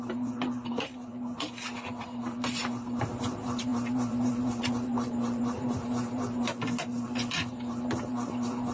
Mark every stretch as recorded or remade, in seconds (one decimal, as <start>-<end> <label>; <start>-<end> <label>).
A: 0.0-1.1 remade; 1.1-2.0 recorded; 2.0-8.7 remade